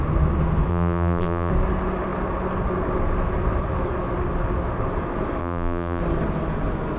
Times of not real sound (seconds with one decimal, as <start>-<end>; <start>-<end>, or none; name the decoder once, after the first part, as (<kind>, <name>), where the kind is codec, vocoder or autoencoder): 0.7-1.5 (vocoder, BigVGAN v2); 5.4-6.0

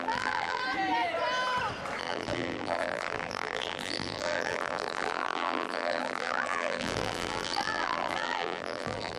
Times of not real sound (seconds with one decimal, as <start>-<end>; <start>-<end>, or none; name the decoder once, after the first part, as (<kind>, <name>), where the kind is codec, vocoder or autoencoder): 0.0-0.6 (vocoder, BigVGAN v2); 2.0-9.2